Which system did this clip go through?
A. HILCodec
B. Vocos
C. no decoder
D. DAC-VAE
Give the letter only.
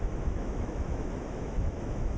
D